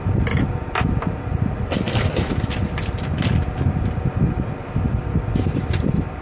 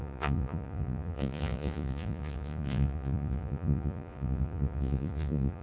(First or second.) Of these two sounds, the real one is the first